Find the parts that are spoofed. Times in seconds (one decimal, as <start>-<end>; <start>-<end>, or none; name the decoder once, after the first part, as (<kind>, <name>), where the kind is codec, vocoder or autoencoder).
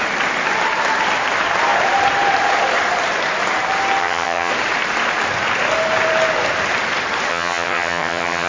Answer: 4.0-4.5 (vocoder, HiFi-GAN); 7.3-8.5